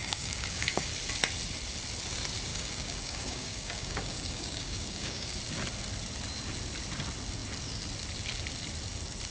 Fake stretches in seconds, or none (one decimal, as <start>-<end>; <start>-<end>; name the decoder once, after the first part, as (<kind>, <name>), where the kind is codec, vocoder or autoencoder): 0.0-0.9 (codec, DAC); 2.5-5.4